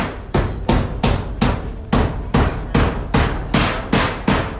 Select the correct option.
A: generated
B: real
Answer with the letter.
B